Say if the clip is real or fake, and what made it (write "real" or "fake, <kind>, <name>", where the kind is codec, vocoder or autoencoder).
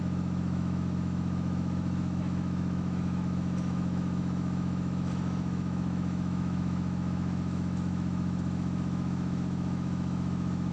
fake, autoencoder, DAC-VAE